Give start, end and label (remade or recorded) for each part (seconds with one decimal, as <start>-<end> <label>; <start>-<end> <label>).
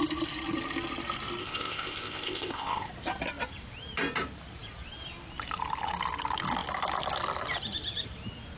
0.0-1.4 recorded; 1.4-2.9 remade; 2.9-8.6 recorded